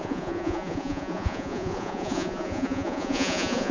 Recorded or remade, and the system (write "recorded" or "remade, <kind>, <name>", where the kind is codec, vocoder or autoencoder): remade, vocoder, Vocos